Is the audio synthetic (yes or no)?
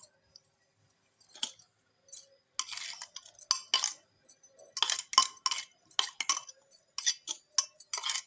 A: no